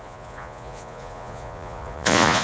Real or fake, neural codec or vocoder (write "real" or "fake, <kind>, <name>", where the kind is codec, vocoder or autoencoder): fake, vocoder, Vocos